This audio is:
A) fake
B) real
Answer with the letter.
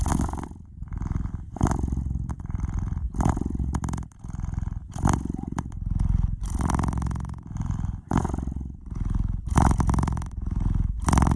A